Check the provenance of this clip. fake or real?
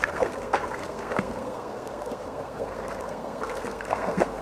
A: fake